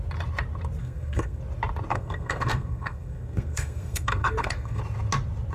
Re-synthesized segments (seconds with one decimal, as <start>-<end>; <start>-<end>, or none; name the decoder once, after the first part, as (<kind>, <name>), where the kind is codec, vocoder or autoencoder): 0.8-1.4 (codec, SNAC); 1.9-4.8